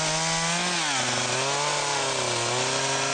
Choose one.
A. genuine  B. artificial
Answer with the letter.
A